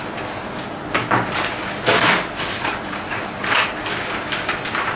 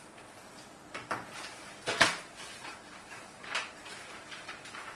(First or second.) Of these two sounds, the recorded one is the first